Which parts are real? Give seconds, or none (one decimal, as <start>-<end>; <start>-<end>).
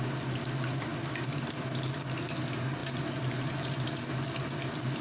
0.0-5.0